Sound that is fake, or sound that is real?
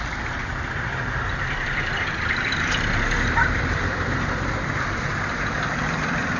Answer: fake